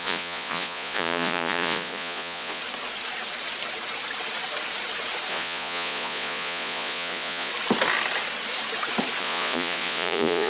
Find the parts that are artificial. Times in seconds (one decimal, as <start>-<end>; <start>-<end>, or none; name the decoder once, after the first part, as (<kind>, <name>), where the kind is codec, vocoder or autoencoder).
0.0-2.6 (vocoder, Vocos); 5.3-7.5; 9.2-10.5